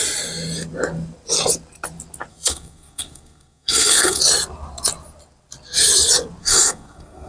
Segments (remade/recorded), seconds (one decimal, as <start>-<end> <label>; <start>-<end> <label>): 0.0-2.3 recorded; 2.3-4.2 remade; 4.2-6.4 recorded; 6.4-7.3 remade